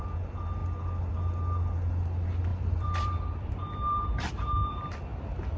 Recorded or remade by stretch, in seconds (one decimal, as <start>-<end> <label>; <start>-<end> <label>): 0.0-2.5 recorded; 2.5-4.9 remade; 4.9-5.6 recorded